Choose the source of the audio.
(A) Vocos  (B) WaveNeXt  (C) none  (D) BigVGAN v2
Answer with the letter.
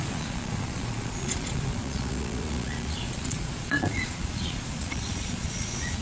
A